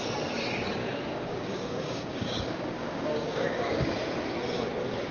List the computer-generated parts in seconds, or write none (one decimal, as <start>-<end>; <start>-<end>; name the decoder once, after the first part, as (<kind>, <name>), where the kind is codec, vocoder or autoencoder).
0.8-3.9 (codec, DAC)